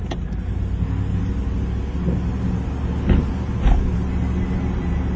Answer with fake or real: real